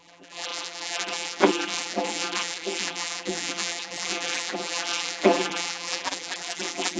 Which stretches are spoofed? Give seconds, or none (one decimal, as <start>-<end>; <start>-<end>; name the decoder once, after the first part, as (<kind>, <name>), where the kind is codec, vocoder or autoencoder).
0.0-7.0 (vocoder, BigVGAN v2)